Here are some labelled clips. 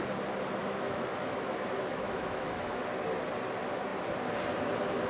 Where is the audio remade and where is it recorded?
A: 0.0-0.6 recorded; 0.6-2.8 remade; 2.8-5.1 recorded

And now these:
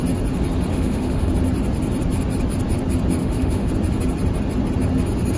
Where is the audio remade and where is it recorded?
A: 0.0-0.7 recorded; 0.7-1.3 remade; 1.3-3.2 recorded; 3.2-3.7 remade; 3.7-5.4 recorded

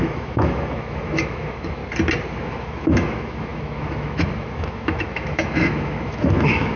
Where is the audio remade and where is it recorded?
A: 0.0-1.8 remade; 1.8-2.4 recorded; 2.4-6.8 remade

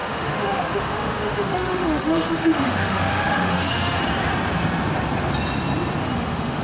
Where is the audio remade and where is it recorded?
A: 0.0-4.0 remade; 4.0-6.0 recorded; 6.0-6.6 remade

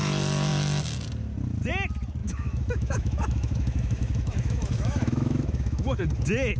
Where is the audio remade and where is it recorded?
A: 0.0-2.2 recorded; 2.2-6.0 remade; 6.0-6.6 recorded

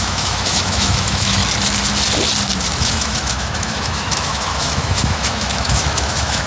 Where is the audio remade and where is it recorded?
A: 0.0-1.4 remade; 1.4-2.7 recorded; 2.7-6.5 remade